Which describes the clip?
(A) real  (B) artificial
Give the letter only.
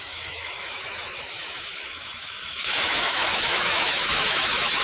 B